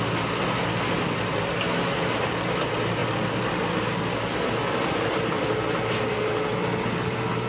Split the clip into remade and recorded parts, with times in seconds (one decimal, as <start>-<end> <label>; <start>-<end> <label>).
0.0-7.5 recorded